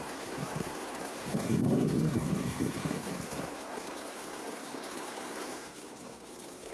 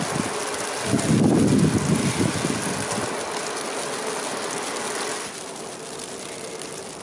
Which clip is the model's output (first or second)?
first